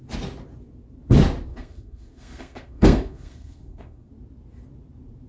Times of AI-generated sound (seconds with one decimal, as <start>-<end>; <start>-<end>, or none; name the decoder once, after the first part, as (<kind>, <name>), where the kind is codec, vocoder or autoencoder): 1.5-4.1 (codec, SNAC)